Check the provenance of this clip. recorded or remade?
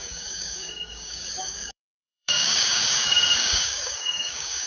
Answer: remade